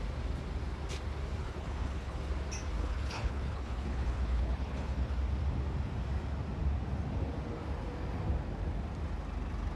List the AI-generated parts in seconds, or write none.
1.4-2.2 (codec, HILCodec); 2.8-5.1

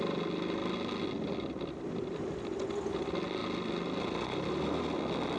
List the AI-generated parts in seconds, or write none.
none

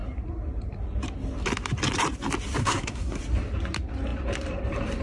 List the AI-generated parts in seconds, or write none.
2.6-3.2 (codec, SNAC)

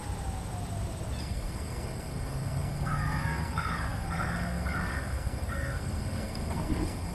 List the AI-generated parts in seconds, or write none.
1.2-7.1 (codec, SNAC)

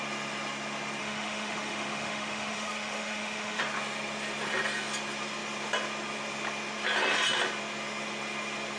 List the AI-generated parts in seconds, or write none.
1.0-3.6 (autoencoder, DAC-VAE)